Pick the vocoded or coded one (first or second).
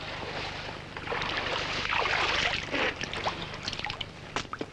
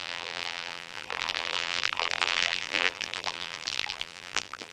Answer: second